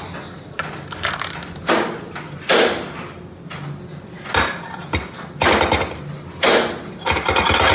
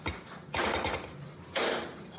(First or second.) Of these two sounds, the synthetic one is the second